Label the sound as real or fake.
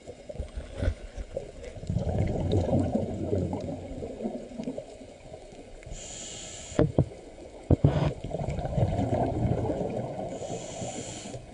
fake